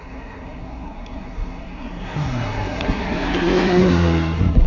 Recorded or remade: remade